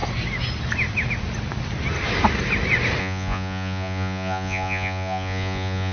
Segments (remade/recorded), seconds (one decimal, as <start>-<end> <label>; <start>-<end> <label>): 0.0-3.0 recorded; 3.0-5.9 remade